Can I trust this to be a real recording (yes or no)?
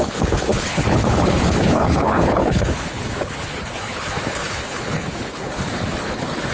no